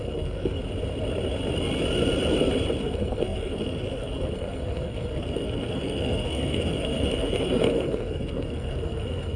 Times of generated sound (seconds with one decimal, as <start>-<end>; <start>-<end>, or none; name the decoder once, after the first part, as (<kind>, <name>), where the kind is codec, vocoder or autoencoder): 0.0-0.6 (codec, SNAC); 2.8-9.4